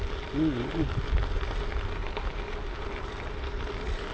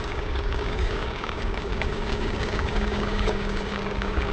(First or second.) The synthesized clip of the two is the second